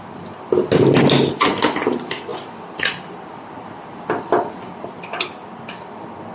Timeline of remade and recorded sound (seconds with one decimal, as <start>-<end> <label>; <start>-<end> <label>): 0.0-6.3 recorded